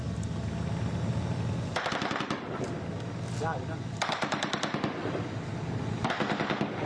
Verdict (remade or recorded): recorded